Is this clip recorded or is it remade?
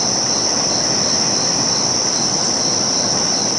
recorded